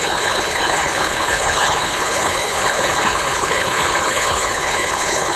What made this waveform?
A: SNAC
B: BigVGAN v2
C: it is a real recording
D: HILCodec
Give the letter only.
D